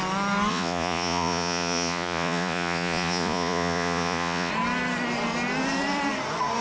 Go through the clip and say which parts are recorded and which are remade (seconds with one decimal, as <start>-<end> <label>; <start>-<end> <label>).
0.0-0.5 recorded; 0.5-4.5 remade; 4.5-6.6 recorded